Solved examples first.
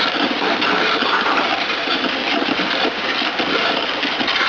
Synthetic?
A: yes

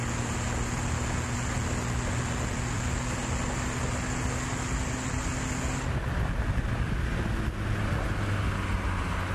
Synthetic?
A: no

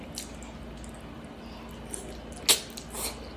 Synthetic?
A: no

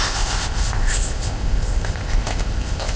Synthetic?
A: yes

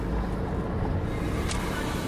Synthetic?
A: no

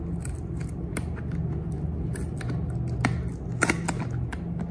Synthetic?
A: no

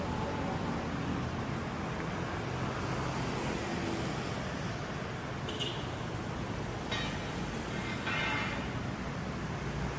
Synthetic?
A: no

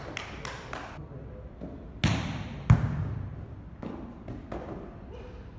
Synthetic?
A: no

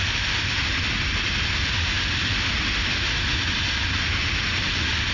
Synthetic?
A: no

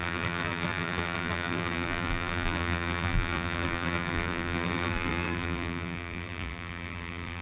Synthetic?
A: yes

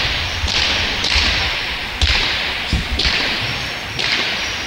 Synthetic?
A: yes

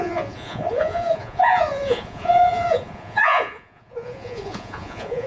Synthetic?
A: yes